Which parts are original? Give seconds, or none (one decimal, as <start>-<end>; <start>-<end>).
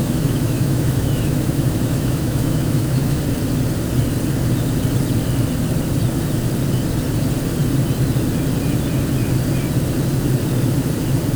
3.2-11.4